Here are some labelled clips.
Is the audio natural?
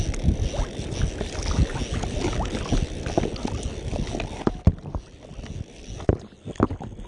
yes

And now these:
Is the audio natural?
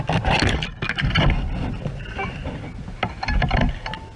yes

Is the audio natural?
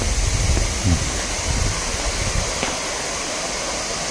yes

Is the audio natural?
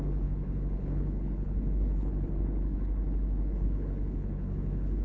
no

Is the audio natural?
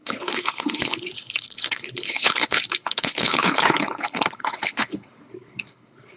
no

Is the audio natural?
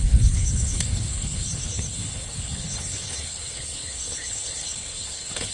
no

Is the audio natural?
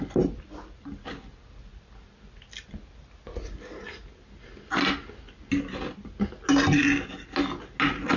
yes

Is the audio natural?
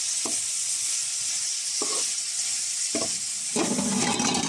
yes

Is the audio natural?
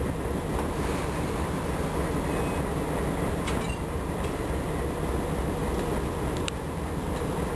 yes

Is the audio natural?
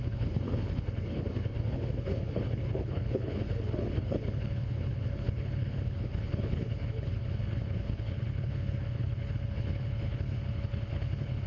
no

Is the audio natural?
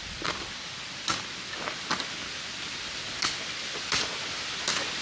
yes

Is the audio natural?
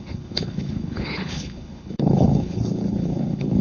no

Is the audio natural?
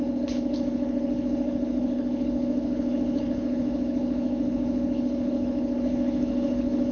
no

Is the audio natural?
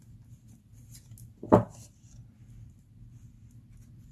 yes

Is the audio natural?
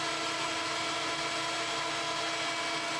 yes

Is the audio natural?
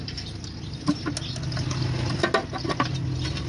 yes